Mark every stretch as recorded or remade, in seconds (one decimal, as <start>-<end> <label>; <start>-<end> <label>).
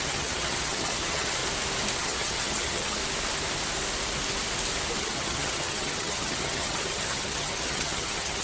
0.0-1.4 remade; 1.4-2.0 recorded; 2.0-3.0 remade; 3.0-5.0 recorded; 5.0-8.4 remade